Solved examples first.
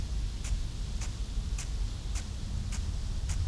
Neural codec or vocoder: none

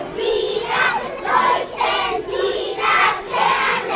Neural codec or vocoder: vocoder, WaveNeXt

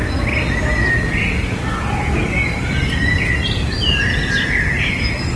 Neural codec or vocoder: none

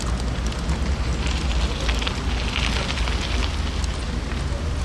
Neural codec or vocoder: none